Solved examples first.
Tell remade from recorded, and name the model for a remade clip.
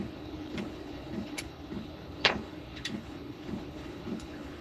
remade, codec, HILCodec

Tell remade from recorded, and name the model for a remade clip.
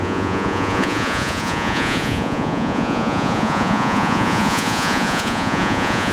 remade, vocoder, Vocos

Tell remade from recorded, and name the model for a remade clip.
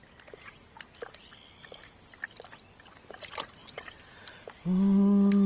recorded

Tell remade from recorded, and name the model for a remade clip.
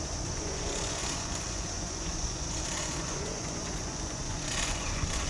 remade, vocoder, Vocos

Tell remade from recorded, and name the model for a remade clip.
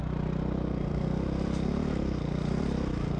recorded